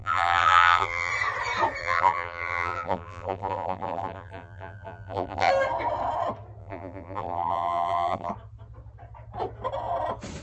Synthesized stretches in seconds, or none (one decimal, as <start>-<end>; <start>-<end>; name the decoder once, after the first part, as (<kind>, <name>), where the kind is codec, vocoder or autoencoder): 0.0-1.1 (vocoder, BigVGAN v2); 1.8-5.5; 6.6-8.3